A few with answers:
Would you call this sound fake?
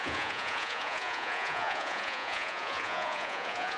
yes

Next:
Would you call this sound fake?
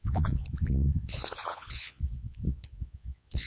yes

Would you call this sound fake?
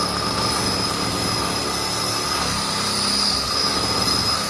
no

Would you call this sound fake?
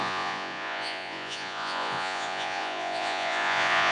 yes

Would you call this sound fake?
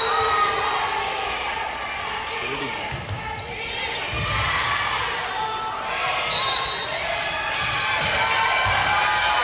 no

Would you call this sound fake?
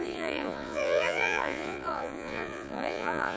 yes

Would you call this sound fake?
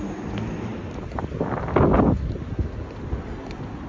no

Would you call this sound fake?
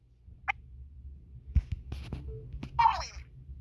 no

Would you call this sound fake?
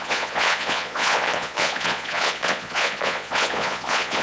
yes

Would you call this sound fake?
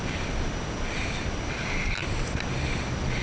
no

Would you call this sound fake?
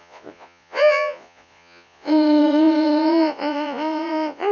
yes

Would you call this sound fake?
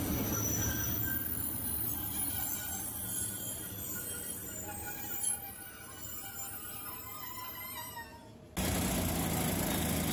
no